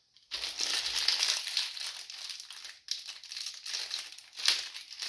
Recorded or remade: recorded